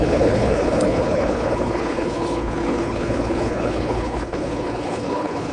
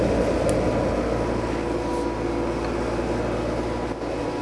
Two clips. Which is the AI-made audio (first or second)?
first